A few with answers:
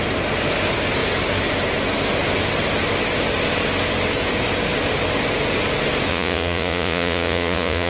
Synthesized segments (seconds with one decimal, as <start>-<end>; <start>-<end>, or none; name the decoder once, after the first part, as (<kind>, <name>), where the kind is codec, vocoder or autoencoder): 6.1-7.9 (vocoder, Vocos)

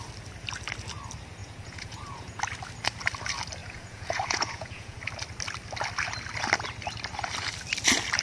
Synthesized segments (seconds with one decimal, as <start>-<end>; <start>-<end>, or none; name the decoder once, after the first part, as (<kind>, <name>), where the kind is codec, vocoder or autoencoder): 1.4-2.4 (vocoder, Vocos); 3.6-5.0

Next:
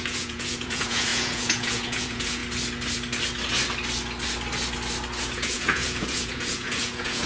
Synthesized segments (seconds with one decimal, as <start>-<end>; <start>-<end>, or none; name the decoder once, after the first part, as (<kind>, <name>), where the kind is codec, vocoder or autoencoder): 0.0-2.4 (vocoder, Vocos); 5.2-7.3